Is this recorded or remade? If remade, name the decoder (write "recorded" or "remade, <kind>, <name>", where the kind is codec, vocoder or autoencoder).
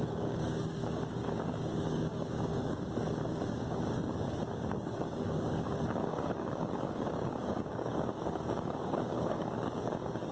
remade, codec, DAC